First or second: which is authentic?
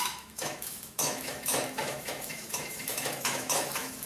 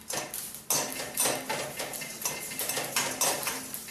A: second